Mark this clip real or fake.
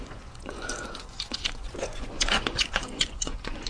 fake